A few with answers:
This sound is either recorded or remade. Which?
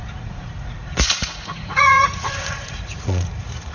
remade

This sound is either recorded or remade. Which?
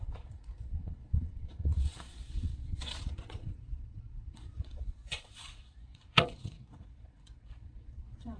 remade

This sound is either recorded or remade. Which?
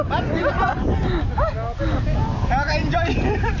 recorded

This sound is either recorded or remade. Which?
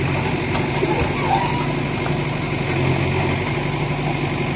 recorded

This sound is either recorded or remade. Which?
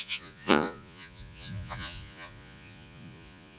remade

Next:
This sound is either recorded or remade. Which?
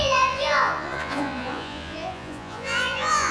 remade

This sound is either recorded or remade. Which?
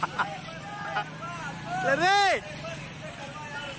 recorded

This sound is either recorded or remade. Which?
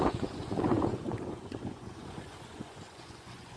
remade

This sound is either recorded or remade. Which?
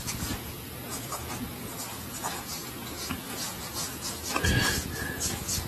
remade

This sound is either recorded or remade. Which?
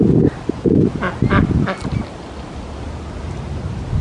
recorded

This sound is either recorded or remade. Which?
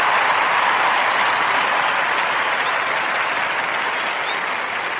recorded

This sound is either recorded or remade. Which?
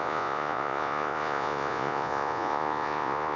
remade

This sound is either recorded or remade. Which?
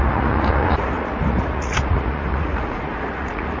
remade